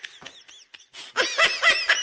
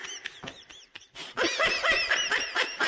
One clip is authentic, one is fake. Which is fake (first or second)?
second